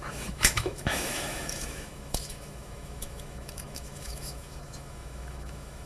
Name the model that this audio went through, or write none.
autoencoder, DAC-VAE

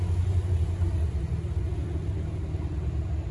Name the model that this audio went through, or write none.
none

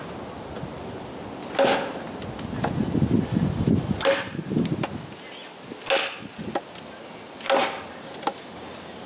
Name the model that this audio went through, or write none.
none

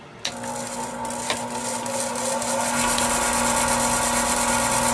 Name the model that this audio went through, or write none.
none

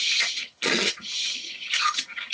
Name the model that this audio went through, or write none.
vocoder, HiFi-GAN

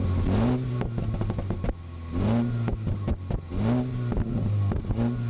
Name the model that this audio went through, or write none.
none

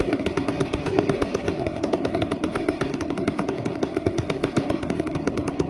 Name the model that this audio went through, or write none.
codec, SNAC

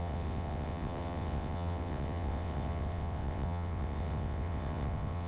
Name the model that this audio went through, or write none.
vocoder, WaveNeXt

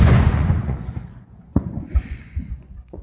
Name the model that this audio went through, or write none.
vocoder, Vocos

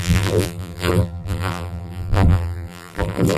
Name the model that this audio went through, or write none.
vocoder, BigVGAN v2